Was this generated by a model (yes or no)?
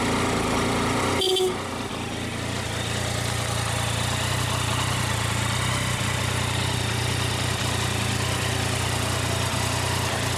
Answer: no